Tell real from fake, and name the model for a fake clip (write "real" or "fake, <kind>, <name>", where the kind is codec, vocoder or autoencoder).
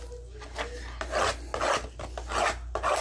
real